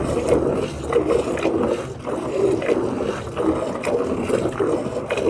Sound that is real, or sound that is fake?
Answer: real